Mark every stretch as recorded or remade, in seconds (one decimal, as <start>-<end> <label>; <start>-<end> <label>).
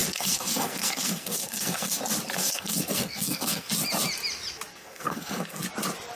0.0-2.0 remade; 2.0-2.4 recorded; 2.4-3.7 remade; 3.7-4.7 recorded; 4.7-5.6 remade; 5.6-6.2 recorded